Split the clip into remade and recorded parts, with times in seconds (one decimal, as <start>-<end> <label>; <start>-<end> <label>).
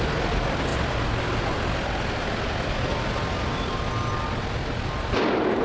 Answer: 0.0-5.6 recorded